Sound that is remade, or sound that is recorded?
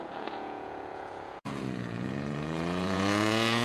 remade